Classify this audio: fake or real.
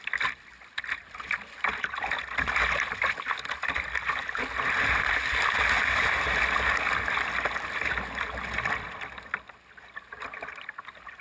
real